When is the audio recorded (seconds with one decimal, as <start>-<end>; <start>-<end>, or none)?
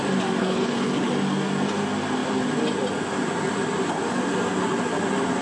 0.0-0.4; 1.1-5.4